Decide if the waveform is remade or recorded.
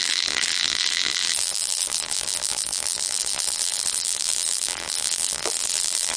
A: remade